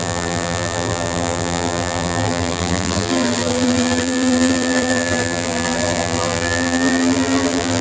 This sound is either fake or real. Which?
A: fake